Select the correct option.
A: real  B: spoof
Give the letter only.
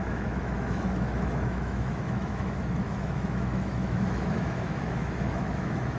B